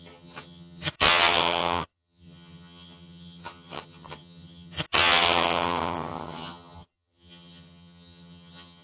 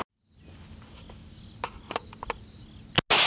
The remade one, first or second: first